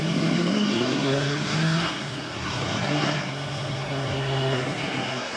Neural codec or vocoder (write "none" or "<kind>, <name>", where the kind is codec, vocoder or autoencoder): codec, SNAC